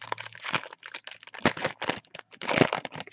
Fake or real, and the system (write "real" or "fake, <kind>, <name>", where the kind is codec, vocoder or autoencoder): real